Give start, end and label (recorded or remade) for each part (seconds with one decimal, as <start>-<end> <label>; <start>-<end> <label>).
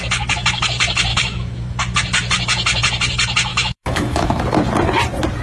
0.0-1.1 recorded; 1.1-1.8 remade; 1.8-3.5 recorded; 3.5-4.4 remade; 4.4-5.4 recorded